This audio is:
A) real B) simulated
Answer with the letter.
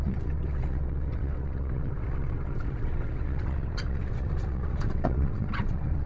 B